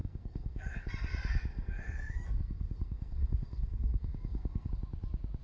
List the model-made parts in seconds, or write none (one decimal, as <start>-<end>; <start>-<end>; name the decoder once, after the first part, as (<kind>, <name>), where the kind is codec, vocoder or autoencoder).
0.0-0.9 (codec, SNAC); 1.5-4.7